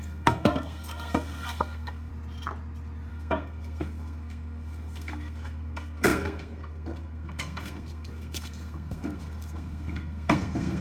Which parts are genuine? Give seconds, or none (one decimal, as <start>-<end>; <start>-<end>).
2.1-3.1